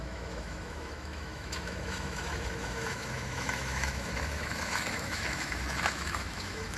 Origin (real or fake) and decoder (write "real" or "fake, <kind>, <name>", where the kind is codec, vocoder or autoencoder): fake, autoencoder, DAC-VAE